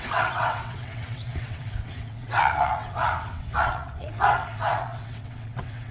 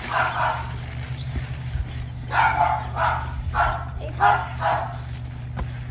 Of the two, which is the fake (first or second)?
first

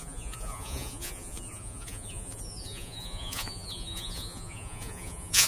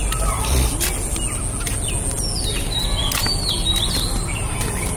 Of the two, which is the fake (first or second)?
first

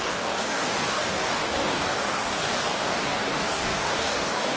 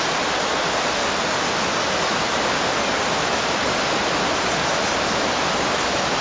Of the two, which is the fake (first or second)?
first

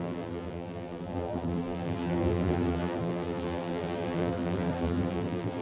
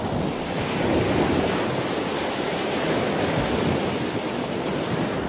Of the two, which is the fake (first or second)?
first